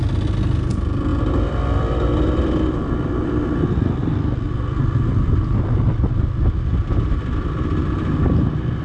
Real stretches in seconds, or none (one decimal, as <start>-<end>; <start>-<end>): 0.0-1.1; 6.3-6.7; 8.2-8.8